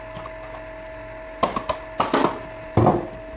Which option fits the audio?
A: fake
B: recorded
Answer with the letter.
B